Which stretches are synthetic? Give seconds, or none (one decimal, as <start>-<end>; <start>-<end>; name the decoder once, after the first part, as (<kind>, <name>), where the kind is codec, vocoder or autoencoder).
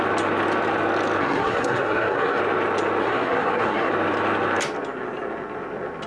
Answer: 1.2-2.4 (codec, SNAC); 3.0-3.9